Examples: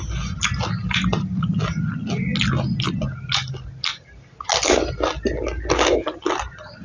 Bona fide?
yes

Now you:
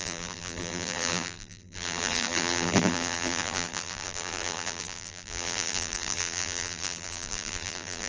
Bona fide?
no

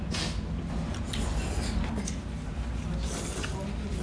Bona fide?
yes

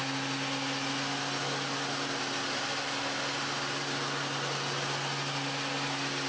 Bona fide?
yes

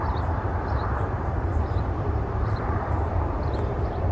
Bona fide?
no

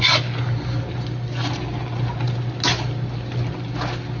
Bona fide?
yes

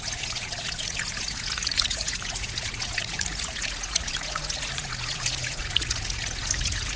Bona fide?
no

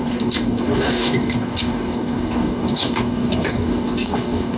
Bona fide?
no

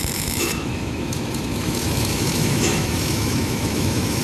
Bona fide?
no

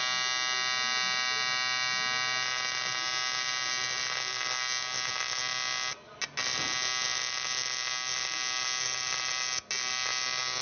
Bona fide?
yes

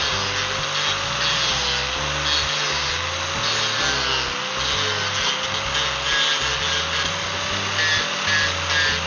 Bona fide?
yes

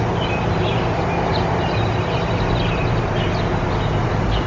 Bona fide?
yes